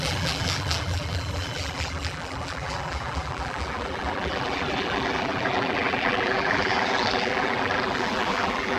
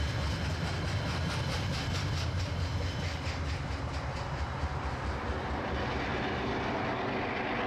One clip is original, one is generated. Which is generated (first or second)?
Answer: first